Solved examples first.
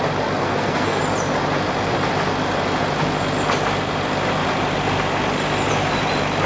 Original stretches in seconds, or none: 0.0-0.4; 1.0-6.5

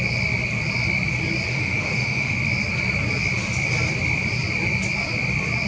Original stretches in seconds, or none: 0.0-1.5; 2.4-5.7

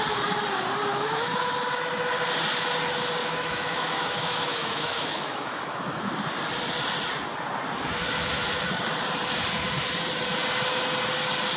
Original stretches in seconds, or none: 0.0-0.9; 1.5-3.2; 6.1-11.6

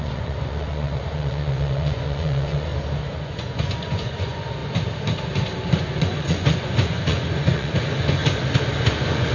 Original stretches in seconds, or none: 2.7-3.2; 4.6-5.8; 8.2-8.8

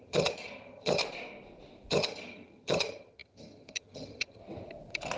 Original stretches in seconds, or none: 1.0-1.9; 4.4-5.2

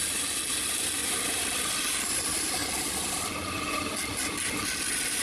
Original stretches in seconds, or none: 0.0-1.0; 1.7-5.2

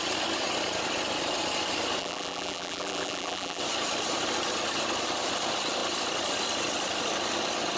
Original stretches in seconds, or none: 0.0-2.0; 3.6-7.8

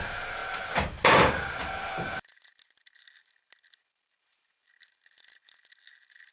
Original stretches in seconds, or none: 0.0-6.3